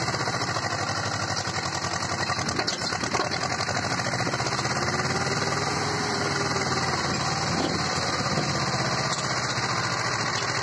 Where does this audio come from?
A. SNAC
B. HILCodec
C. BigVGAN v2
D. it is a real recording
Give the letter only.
D